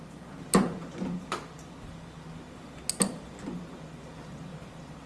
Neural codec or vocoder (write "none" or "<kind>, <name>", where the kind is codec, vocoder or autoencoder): none